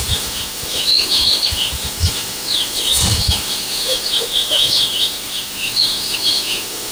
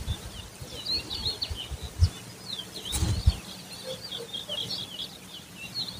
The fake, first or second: first